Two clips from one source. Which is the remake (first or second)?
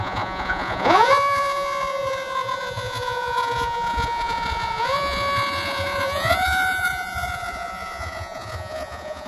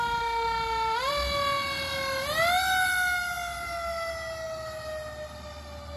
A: first